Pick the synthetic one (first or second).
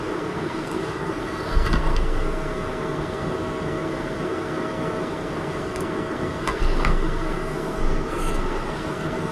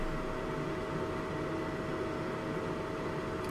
first